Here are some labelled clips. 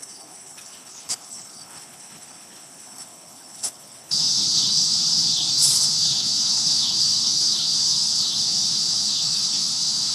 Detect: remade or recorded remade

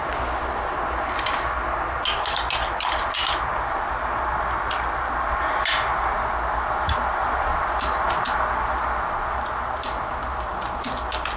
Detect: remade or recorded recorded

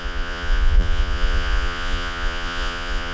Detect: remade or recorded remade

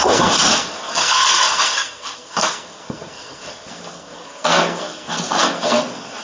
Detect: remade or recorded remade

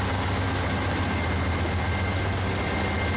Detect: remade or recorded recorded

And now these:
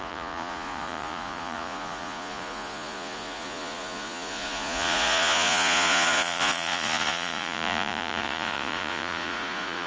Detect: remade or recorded remade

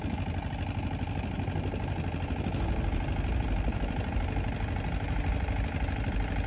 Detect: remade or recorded recorded